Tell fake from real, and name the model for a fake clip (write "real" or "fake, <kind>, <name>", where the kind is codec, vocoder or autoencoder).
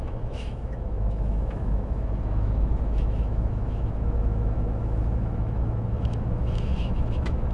fake, autoencoder, DAC-VAE